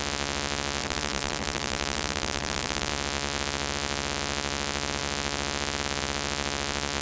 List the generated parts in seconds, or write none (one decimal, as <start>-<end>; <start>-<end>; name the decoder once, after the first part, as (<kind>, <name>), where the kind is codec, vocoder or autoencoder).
0.8-2.9 (vocoder, BigVGAN v2)